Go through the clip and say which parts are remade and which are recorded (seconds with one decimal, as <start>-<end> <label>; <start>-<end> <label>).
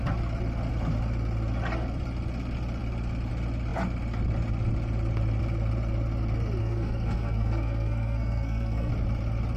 0.0-6.6 recorded; 6.6-8.9 remade; 8.9-9.6 recorded